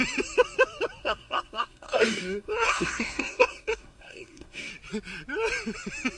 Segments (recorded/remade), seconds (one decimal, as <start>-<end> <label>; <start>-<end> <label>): 0.0-1.0 recorded; 1.0-4.7 remade; 4.7-6.2 recorded